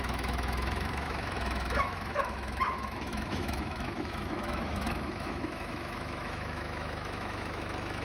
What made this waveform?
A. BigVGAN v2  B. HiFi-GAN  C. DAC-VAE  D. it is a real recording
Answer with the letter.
C